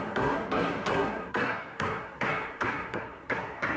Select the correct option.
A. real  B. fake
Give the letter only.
B